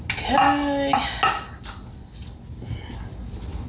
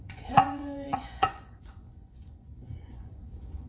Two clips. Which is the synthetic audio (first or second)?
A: second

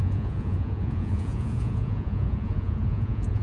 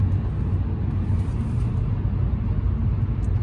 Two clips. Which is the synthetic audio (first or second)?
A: first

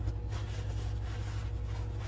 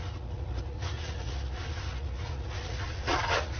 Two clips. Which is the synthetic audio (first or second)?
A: second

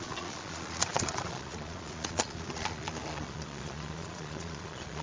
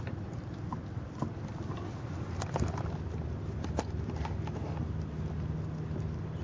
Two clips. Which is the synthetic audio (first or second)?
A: first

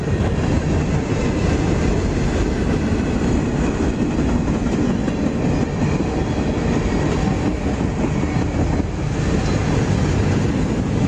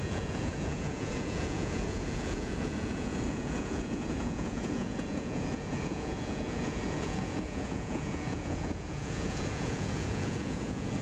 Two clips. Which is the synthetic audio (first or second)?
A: second